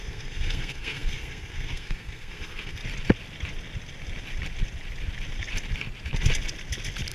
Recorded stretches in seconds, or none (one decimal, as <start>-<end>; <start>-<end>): 2.8-7.1